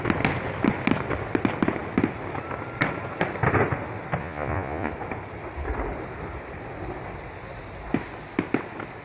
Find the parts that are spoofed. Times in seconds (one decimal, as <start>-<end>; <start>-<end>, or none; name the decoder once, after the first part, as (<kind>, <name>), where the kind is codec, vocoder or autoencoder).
4.2-4.9 (vocoder, Vocos)